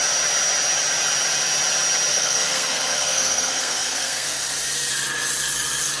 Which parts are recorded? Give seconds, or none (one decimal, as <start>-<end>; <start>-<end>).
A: 0.0-2.1; 4.5-6.0